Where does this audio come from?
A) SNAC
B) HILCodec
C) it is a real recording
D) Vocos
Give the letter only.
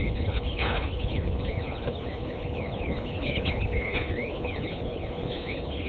B